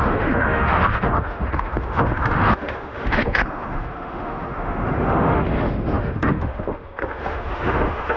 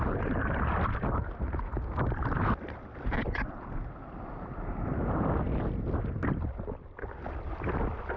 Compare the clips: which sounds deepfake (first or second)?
first